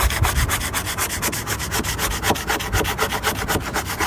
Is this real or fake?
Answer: real